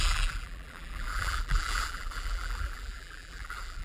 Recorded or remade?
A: remade